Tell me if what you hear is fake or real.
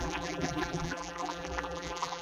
fake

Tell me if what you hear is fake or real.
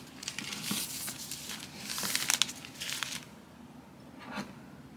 real